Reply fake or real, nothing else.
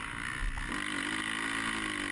real